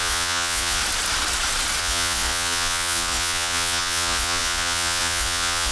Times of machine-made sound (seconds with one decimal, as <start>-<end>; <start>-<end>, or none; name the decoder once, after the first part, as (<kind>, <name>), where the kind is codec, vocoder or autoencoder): 0.0-0.8 (vocoder, Vocos); 1.8-5.7